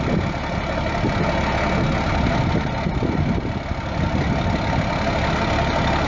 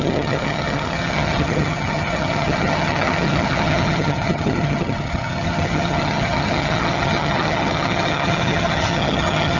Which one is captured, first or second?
first